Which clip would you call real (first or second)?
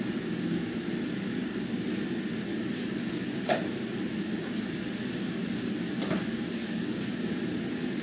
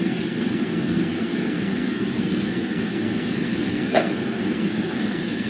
first